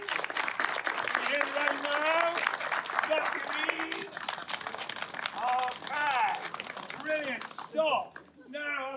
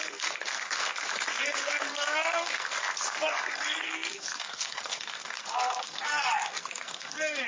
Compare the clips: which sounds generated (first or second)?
second